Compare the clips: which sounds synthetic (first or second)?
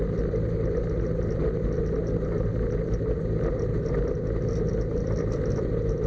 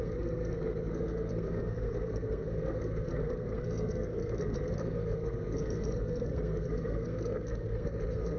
second